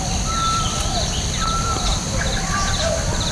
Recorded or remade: remade